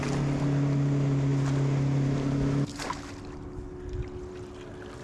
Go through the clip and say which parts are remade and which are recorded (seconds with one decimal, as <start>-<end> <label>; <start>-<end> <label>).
0.0-5.0 recorded